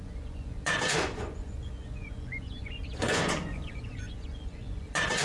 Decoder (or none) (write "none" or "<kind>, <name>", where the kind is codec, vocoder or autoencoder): vocoder, Vocos